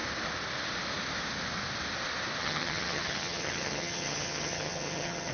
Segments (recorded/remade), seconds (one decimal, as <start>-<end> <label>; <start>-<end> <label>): 0.0-2.4 recorded; 2.4-5.3 remade